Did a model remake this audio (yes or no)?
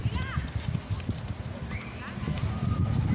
no